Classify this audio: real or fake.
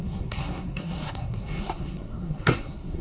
fake